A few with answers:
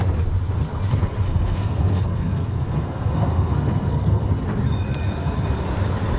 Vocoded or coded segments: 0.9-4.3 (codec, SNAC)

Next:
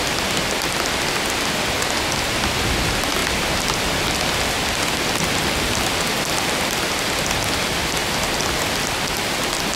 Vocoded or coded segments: none

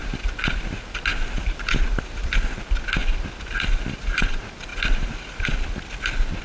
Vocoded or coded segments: 1.1-2.6 (vocoder, BigVGAN v2); 3.0-4.3; 4.7-6.4